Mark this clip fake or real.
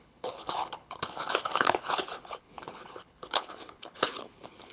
fake